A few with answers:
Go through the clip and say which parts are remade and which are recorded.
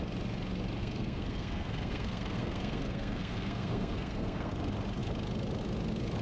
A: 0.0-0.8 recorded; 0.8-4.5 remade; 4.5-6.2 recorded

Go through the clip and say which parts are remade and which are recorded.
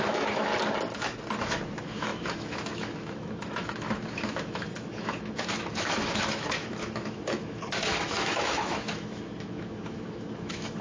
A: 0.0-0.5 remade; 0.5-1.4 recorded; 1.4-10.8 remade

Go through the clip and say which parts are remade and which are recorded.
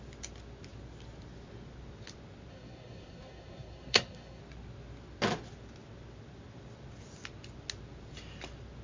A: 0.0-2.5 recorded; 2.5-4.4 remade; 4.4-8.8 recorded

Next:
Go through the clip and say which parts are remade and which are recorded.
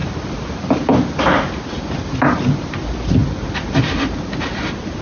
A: 0.0-5.0 recorded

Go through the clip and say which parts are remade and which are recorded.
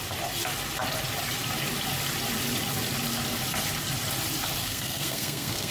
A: 0.0-4.6 recorded; 4.6-5.7 remade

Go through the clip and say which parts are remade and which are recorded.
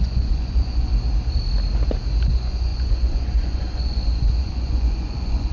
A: 0.0-0.9 remade; 0.9-2.3 recorded; 2.3-5.5 remade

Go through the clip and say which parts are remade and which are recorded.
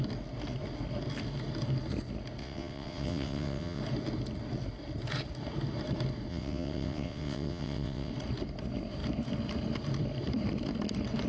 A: 0.0-2.4 recorded; 2.4-3.8 remade; 3.8-6.3 recorded; 6.3-8.1 remade; 8.1-11.3 recorded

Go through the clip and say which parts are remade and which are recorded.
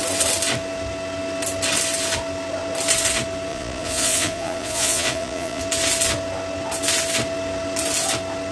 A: 0.0-3.5 recorded; 3.5-5.6 remade; 5.6-8.5 recorded